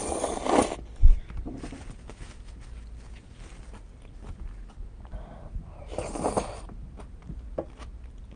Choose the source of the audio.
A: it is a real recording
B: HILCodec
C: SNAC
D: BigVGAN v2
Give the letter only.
A